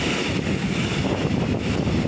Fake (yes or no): no